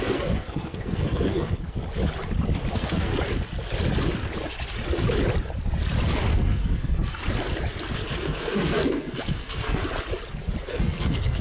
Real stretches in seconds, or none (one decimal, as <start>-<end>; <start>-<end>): 1.8-2.7; 3.1-6.3; 7.2-8.2; 9.8-10.6